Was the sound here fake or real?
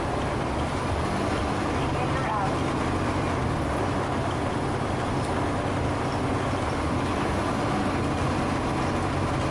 real